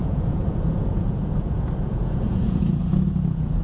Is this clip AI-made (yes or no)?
yes